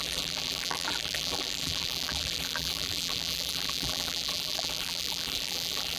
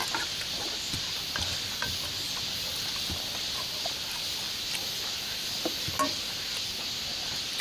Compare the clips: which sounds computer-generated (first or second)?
first